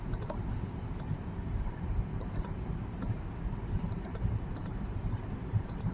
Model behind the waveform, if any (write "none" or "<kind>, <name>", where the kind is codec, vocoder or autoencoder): vocoder, BigVGAN v2